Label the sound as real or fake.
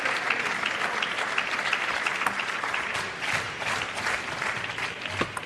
real